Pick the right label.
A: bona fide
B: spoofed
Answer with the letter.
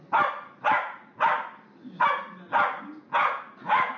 A